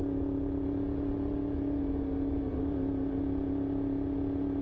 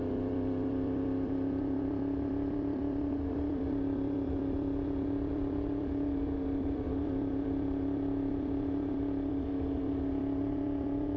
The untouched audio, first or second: first